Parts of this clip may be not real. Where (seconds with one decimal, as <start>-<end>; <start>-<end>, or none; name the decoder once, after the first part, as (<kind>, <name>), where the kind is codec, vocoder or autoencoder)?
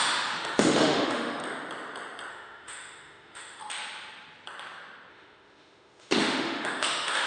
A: 0.0-1.4 (autoencoder, DAC-VAE); 2.3-3.6; 5.1-7.3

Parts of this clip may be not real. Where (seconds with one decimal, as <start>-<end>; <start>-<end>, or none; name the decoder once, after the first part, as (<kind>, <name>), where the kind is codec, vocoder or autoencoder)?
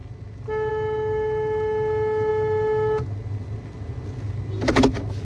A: none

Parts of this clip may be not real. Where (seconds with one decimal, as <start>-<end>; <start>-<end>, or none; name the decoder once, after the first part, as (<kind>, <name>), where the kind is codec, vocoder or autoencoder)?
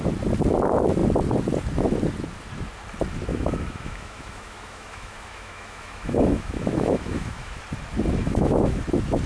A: 3.3-7.6 (autoencoder, DAC-VAE); 8.2-8.8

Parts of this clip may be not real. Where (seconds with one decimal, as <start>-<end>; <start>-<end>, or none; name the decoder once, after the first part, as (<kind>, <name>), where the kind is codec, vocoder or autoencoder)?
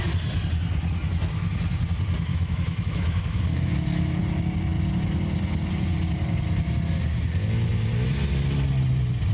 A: 2.3-3.7 (autoencoder, DAC-VAE)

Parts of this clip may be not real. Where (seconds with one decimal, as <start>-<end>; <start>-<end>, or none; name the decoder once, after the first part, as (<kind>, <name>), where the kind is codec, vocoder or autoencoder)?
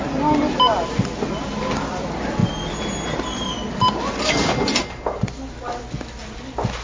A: none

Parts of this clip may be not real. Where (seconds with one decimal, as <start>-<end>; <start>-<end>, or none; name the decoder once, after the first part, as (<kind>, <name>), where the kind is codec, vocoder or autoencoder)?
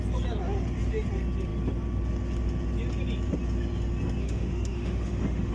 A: 4.2-5.5 (autoencoder, DAC-VAE)